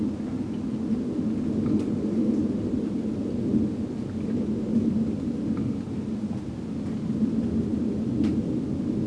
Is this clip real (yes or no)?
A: yes